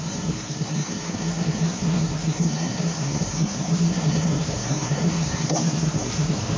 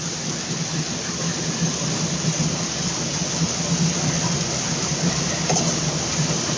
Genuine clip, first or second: second